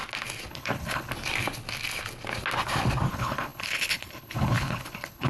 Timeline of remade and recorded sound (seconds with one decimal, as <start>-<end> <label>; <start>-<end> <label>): 0.0-0.5 recorded; 0.5-1.1 remade; 1.1-3.1 recorded; 3.1-5.3 remade